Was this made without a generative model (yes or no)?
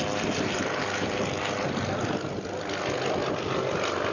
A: no